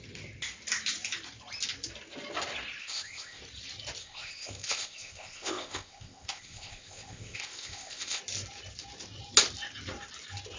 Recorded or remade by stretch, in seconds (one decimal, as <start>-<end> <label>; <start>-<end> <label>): 0.0-2.8 recorded; 2.8-3.4 remade; 3.4-4.0 recorded; 4.0-8.2 remade; 8.2-10.6 recorded